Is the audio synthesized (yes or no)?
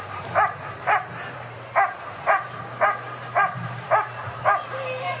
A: yes